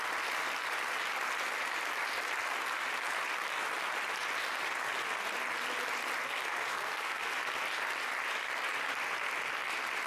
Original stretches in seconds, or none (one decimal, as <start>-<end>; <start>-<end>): 0.0-6.7; 7.3-10.1